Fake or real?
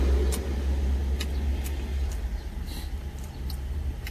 real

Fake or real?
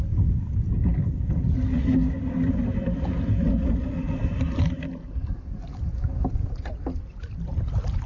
real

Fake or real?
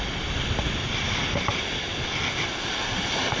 real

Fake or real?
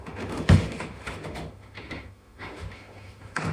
fake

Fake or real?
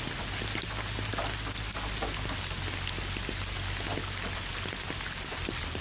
real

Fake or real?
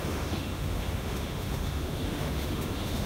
fake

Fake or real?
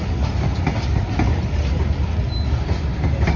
real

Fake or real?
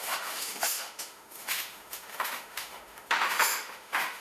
fake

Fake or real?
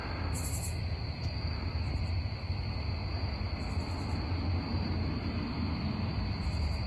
real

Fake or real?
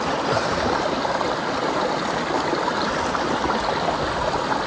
real